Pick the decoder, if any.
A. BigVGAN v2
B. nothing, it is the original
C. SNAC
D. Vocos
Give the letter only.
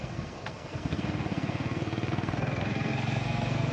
C